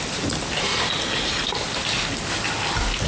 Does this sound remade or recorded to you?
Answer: remade